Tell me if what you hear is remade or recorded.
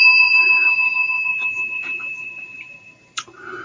remade